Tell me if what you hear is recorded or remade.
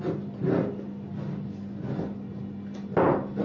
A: recorded